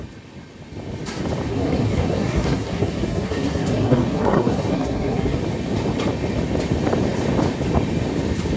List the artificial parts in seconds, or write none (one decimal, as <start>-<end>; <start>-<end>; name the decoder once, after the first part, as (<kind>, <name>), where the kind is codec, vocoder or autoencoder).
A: 1.5-5.4 (codec, SNAC)